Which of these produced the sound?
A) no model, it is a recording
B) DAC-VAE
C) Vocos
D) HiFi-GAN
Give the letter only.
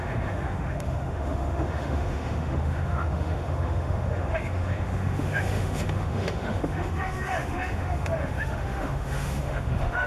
B